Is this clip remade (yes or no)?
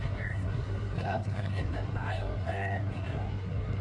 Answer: yes